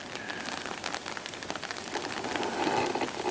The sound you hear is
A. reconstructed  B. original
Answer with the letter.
B